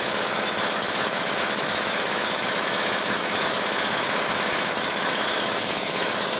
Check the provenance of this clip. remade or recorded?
remade